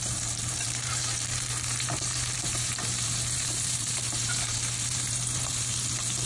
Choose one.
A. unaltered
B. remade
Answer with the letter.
B